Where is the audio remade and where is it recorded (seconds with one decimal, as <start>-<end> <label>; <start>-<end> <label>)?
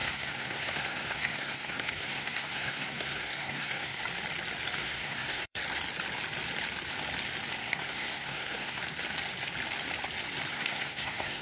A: 0.0-4.0 remade; 4.0-4.8 recorded; 4.8-5.6 remade; 5.6-7.6 recorded; 7.6-8.8 remade; 8.8-10.5 recorded; 10.5-11.4 remade